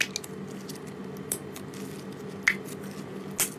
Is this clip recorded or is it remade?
recorded